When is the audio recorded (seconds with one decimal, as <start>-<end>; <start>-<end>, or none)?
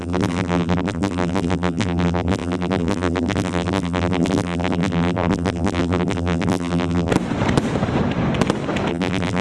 7.1-8.9